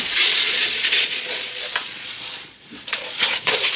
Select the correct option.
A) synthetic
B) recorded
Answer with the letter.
A